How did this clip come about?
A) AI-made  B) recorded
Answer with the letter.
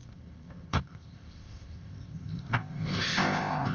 A